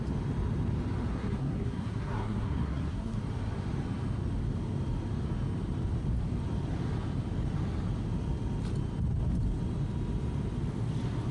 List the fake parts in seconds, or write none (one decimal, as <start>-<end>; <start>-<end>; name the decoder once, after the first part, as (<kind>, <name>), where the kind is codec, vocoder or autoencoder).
1.1-3.2 (codec, SNAC)